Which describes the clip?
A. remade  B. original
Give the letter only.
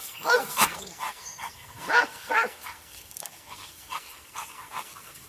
A